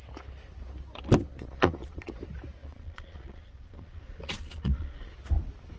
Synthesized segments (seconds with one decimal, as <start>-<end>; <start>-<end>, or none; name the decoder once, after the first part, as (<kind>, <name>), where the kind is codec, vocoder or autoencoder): 1.3-2.1 (vocoder, Vocos); 2.6-5.1